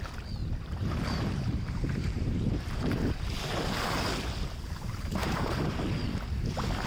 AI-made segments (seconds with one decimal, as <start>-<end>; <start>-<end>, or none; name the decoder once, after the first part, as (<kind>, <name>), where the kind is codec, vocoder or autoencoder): 0.4-3.1 (vocoder, BigVGAN v2); 5.2-5.8